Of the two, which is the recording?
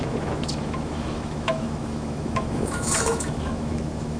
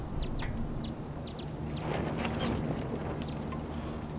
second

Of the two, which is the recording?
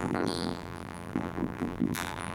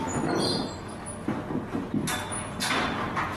second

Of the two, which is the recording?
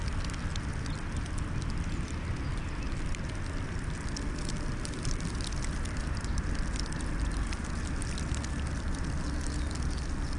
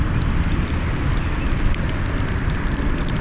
first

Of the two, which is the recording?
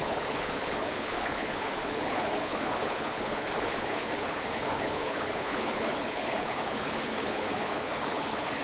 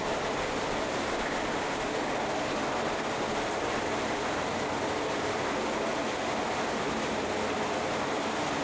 second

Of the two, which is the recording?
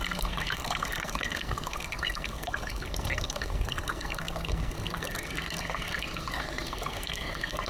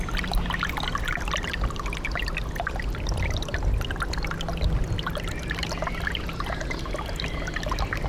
second